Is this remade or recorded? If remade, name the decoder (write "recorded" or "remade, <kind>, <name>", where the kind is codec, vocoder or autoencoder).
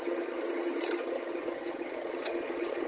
remade, vocoder, HiFi-GAN